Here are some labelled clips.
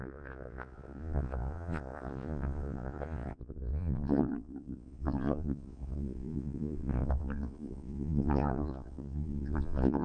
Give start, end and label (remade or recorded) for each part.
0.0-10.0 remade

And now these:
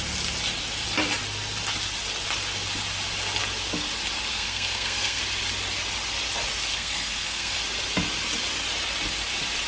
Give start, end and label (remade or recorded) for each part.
0.0-4.3 recorded; 4.3-5.2 remade; 5.2-6.7 recorded; 6.7-7.6 remade; 7.6-9.7 recorded

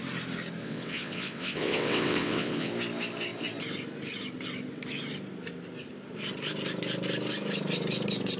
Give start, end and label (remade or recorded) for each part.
0.0-0.6 recorded; 0.6-2.7 remade; 2.7-8.4 recorded

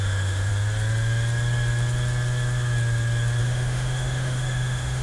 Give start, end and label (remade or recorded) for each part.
0.0-0.5 remade; 0.5-3.4 recorded; 3.4-5.0 remade